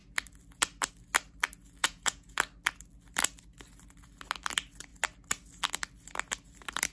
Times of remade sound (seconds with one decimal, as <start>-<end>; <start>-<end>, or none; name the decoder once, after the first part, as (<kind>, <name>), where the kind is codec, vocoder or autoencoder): 1.8-2.4 (vocoder, Vocos)

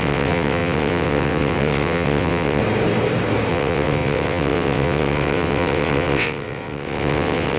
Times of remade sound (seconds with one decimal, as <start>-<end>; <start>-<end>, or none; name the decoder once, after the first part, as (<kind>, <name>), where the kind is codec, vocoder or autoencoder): 0.0-2.6 (vocoder, WaveNeXt); 3.5-7.6

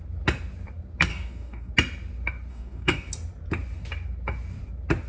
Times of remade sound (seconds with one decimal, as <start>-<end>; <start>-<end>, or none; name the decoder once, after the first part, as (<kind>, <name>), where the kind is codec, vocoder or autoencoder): 1.1-1.7 (codec, DAC); 2.5-3.1

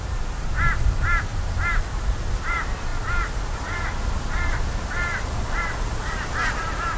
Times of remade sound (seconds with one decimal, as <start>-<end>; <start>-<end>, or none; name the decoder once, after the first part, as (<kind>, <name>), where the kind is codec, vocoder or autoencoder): 0.0-1.3 (vocoder, BigVGAN v2); 2.3-2.9; 4.9-7.0